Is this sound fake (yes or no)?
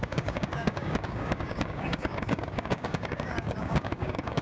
yes